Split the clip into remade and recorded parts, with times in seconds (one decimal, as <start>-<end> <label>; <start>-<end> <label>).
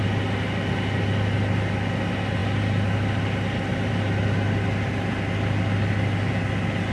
0.0-6.9 recorded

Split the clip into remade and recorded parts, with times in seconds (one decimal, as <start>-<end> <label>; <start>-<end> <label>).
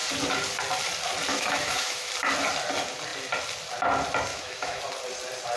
0.0-1.3 recorded; 1.3-2.1 remade; 2.1-4.3 recorded; 4.3-4.8 remade; 4.8-5.6 recorded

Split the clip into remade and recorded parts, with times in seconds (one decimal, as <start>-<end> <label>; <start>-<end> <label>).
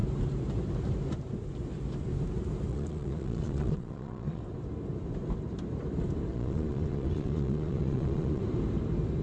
0.0-2.7 recorded; 2.7-4.4 remade; 4.4-6.3 recorded; 6.3-8.4 remade; 8.4-9.2 recorded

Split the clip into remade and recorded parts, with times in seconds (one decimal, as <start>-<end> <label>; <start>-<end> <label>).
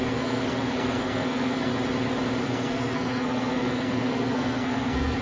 0.0-1.7 remade; 1.7-2.4 recorded; 2.4-5.2 remade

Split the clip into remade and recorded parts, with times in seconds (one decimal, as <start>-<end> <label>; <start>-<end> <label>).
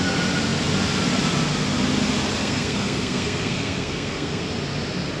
0.0-2.4 recorded; 2.4-4.4 remade; 4.4-5.2 recorded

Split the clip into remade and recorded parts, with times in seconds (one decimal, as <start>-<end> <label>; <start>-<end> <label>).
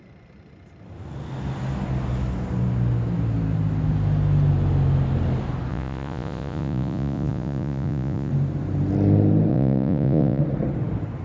0.0-5.7 recorded; 5.7-8.3 remade; 8.3-9.5 recorded; 9.5-10.4 remade; 10.4-11.2 recorded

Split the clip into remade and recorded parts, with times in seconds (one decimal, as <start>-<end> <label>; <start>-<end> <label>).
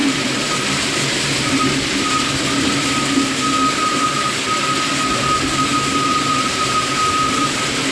0.0-0.6 remade; 0.6-5.7 recorded; 5.7-7.9 remade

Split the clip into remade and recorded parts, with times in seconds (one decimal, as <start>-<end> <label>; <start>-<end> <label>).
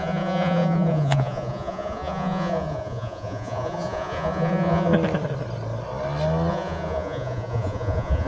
0.0-4.9 remade; 4.9-6.5 recorded; 6.5-8.3 remade